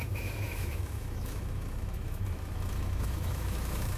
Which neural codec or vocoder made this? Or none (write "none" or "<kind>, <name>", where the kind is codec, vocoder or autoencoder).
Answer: autoencoder, DAC-VAE